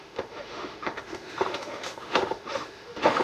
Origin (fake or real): fake